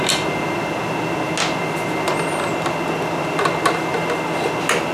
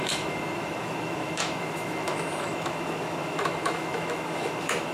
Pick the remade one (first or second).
second